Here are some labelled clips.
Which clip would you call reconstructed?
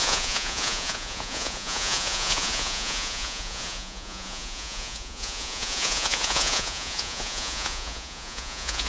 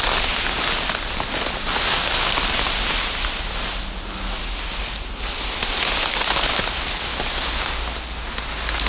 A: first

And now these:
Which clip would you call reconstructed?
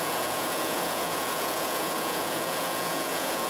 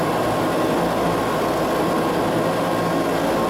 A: first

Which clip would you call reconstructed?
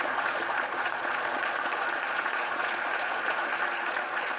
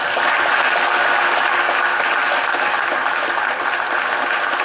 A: first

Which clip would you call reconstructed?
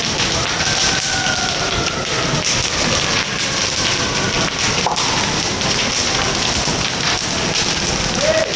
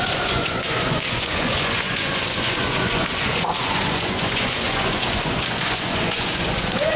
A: second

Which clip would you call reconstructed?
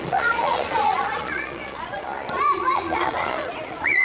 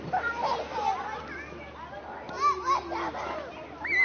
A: first